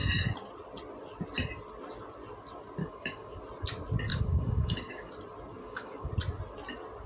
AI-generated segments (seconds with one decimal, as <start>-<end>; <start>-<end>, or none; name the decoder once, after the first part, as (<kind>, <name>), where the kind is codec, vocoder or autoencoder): 2.8-3.4 (codec, DAC); 4.1-5.1; 5.6-6.1